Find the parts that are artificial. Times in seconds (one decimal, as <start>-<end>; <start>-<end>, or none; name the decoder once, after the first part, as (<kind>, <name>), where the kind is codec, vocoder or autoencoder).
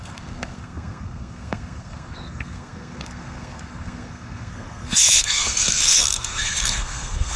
0.0-7.4 (codec, SNAC)